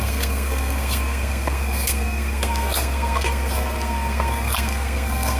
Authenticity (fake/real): fake